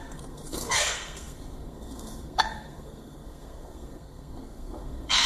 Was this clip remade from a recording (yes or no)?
yes